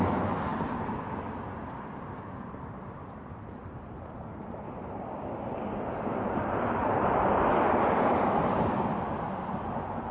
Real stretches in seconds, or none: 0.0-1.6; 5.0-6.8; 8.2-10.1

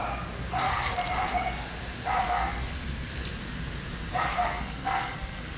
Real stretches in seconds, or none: 0.0-0.5; 0.9-2.2; 3.1-4.1

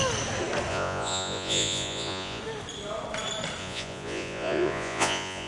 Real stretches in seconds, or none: 0.0-0.7; 2.4-3.6

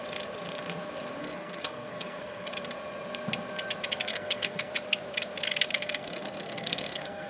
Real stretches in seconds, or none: 0.0-1.2; 2.5-4.1; 4.7-5.7

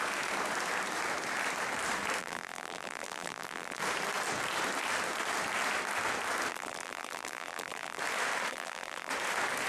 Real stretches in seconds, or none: 0.0-2.2; 3.8-6.5; 8.0-8.5; 9.1-9.7